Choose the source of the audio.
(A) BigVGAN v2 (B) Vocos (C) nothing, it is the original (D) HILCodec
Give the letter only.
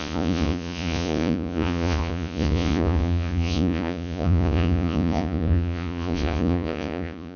B